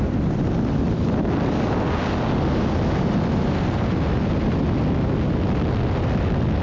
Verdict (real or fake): real